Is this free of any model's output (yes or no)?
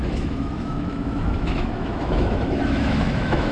no